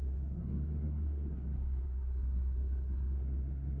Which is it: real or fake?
fake